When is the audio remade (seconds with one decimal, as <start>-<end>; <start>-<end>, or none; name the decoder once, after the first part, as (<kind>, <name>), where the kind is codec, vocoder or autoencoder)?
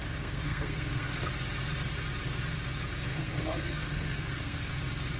0.0-1.3 (codec, SNAC); 3.1-4.7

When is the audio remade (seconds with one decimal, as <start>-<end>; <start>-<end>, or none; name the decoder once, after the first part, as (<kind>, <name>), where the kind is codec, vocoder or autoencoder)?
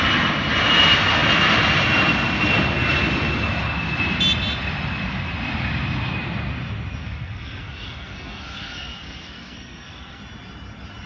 7.0-10.2 (codec, SNAC)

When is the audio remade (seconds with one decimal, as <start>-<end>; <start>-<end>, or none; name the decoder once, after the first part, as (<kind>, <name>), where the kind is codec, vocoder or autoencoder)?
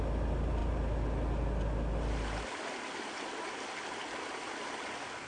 none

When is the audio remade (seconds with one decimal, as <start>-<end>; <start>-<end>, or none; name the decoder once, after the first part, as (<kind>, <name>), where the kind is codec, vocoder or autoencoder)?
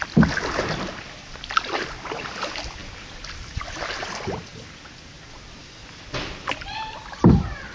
none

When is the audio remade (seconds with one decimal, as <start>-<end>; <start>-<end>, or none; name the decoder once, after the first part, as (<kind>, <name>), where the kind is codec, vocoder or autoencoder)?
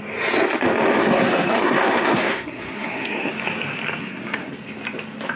1.0-3.3 (codec, SNAC); 4.0-4.5